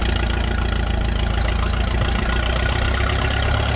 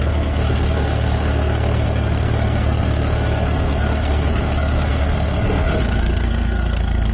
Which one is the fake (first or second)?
second